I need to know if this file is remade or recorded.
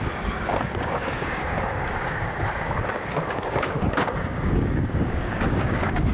remade